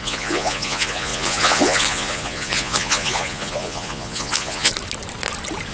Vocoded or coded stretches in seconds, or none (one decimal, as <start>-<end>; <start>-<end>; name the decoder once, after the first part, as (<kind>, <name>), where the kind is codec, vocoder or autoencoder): 0.0-4.7 (vocoder, Vocos)